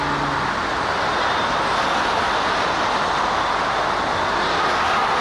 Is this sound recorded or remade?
recorded